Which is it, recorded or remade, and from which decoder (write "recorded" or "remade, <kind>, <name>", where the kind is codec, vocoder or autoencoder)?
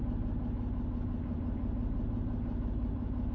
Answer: recorded